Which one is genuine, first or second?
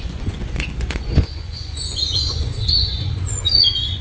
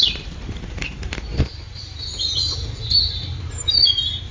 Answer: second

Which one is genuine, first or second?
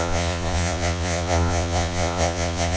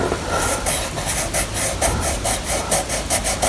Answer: second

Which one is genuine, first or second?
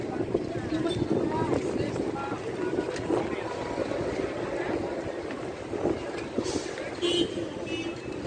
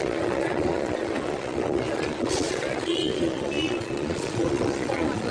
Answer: first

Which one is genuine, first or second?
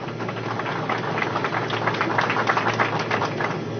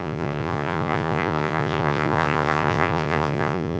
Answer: first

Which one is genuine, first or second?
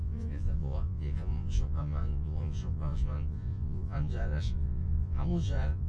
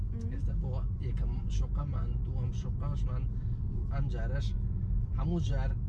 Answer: second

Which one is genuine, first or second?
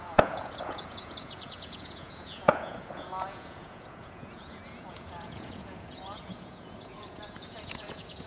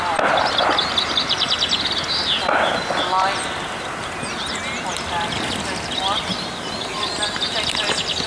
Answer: second